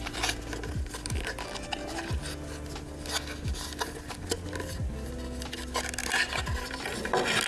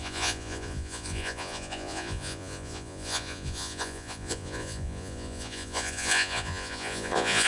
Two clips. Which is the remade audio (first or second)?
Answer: second